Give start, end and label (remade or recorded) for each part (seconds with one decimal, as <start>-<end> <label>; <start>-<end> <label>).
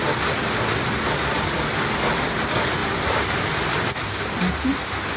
0.0-5.2 recorded